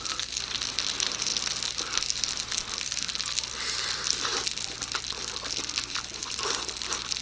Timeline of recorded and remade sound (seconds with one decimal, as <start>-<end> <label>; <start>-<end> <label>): 0.0-7.2 recorded